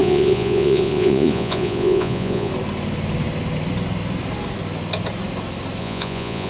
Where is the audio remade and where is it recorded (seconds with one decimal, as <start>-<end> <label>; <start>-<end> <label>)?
0.0-2.5 remade; 2.5-5.8 recorded; 5.8-6.5 remade